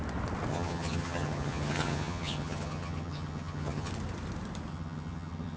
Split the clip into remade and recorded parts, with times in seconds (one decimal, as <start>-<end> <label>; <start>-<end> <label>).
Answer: 0.0-0.5 recorded; 0.5-3.9 remade; 3.9-4.7 recorded; 4.7-5.6 remade

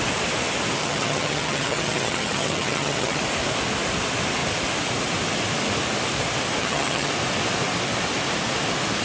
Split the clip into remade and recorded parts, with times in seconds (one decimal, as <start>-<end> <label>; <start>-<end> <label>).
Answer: 0.0-0.8 recorded; 0.8-3.2 remade; 3.2-6.6 recorded; 6.6-7.1 remade; 7.1-9.0 recorded

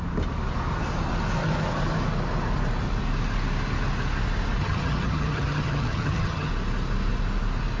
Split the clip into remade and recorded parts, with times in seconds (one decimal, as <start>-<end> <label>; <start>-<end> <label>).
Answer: 0.0-4.6 recorded; 4.6-6.5 remade; 6.5-7.8 recorded